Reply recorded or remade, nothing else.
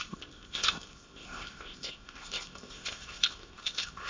remade